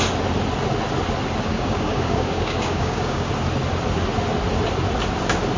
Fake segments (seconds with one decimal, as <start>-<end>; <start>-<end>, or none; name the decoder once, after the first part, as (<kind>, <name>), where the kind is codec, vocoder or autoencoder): 1.5-3.3 (codec, DAC)